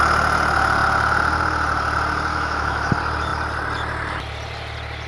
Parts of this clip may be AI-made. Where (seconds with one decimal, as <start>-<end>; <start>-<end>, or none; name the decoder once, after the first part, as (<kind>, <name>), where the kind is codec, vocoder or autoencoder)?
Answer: 2.3-2.9 (autoencoder, DAC-VAE)